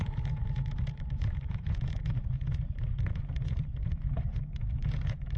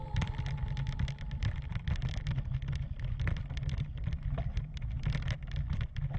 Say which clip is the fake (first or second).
first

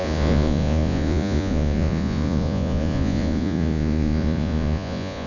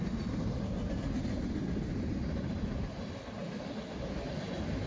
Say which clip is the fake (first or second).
first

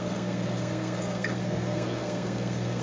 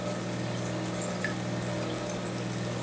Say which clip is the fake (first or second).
first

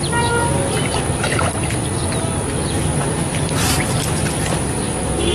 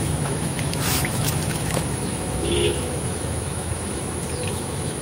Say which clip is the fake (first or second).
second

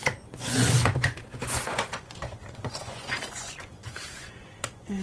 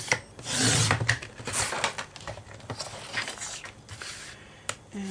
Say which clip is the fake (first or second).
first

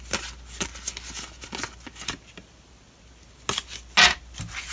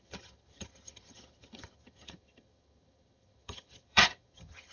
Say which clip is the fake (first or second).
second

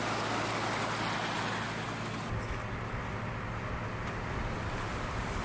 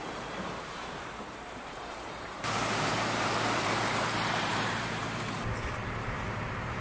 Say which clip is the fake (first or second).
second